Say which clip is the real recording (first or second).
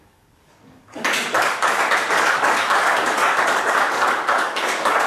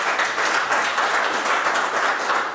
second